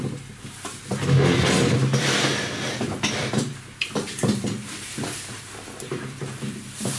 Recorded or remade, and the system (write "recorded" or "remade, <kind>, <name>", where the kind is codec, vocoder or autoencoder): remade, vocoder, BigVGAN v2